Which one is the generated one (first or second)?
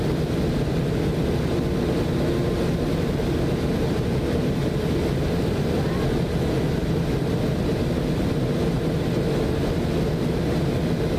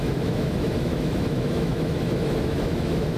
second